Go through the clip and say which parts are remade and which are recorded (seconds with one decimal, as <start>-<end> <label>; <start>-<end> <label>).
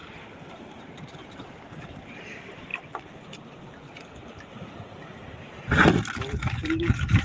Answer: 0.0-2.7 remade; 2.7-7.2 recorded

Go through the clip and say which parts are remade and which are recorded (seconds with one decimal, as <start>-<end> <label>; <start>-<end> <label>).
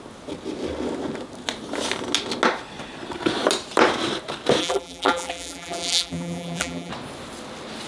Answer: 0.0-4.6 recorded; 4.6-6.9 remade; 6.9-7.9 recorded